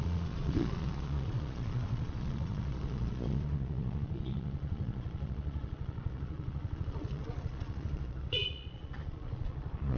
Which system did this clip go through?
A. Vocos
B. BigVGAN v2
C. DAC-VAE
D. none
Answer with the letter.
A